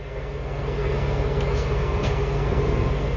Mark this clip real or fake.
fake